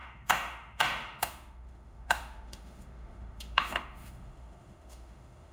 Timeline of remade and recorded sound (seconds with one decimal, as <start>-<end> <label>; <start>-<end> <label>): 0.0-5.5 remade